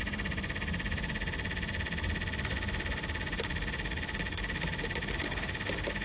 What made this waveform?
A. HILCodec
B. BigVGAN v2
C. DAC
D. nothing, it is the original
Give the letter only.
D